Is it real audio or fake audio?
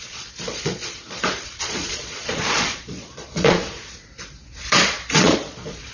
fake